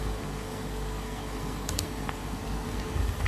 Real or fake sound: fake